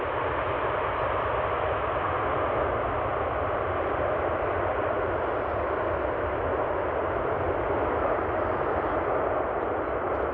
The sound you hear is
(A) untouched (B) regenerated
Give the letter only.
A